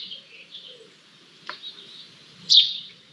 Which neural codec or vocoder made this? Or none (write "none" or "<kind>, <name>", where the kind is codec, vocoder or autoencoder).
vocoder, BigVGAN v2